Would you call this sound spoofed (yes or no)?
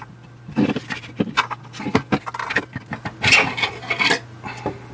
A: no